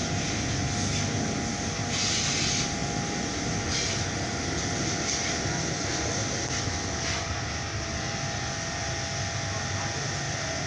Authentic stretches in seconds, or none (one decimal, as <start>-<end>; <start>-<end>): 0.0-10.7